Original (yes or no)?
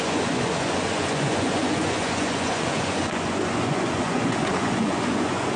no